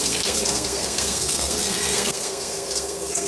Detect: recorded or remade remade